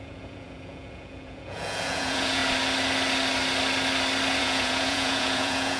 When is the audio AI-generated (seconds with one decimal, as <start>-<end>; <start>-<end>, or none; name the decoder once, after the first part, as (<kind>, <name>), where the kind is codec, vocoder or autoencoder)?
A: 0.0-2.4 (vocoder, Vocos); 4.4-5.8